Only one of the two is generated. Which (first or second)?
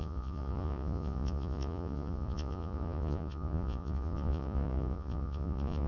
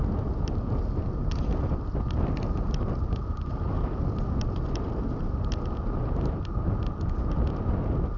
first